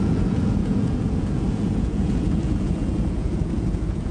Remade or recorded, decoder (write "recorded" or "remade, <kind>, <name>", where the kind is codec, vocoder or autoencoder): remade, vocoder, Vocos